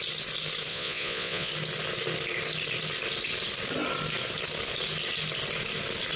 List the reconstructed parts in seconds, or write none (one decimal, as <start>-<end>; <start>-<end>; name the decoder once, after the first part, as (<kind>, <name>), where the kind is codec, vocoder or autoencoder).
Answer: 0.7-1.5 (vocoder, Vocos)